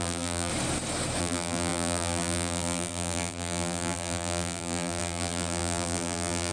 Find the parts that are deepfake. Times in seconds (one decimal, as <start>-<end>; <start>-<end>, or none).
0.0-0.5; 1.2-6.5

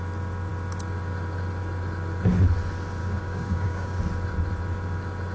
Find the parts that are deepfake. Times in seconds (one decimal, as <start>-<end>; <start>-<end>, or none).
3.0-4.0

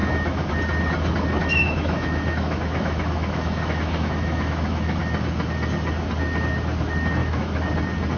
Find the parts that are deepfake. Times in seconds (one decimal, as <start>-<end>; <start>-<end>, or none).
0.0-0.5; 1.4-5.0; 7.2-7.7

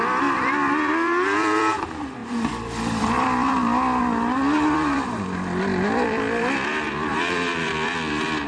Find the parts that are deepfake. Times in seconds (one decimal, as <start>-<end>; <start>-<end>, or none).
0.0-8.5

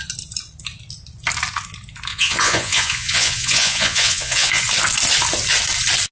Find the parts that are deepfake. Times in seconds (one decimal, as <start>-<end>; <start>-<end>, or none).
2.1-4.6

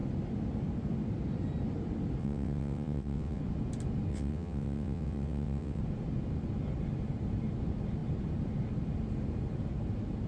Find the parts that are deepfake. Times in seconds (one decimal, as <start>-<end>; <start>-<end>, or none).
2.2-3.4; 4.1-5.8

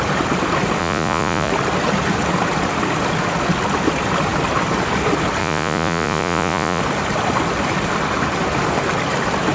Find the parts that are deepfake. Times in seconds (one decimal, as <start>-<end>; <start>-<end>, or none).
0.8-1.5; 5.4-6.8